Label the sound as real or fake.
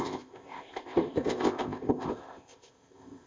fake